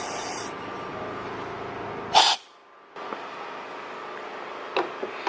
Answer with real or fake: real